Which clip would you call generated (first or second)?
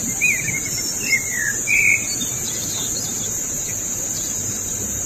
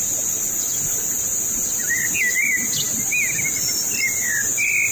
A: first